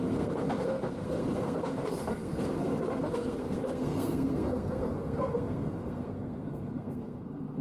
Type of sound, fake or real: fake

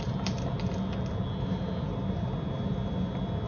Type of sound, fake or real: real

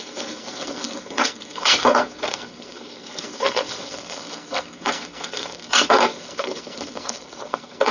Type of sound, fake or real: fake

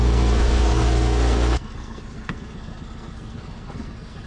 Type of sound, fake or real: fake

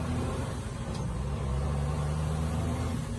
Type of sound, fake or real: real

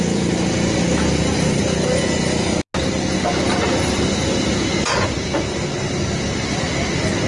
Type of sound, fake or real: real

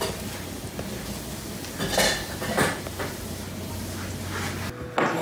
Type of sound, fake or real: real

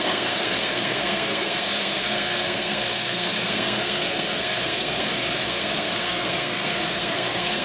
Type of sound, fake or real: fake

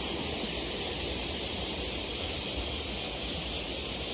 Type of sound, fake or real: real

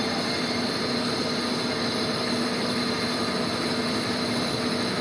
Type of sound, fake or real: real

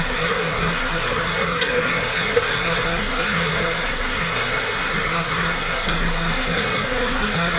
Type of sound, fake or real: fake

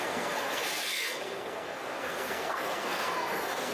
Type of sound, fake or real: fake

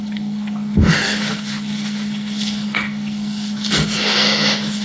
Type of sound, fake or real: fake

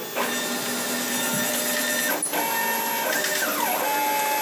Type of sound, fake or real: real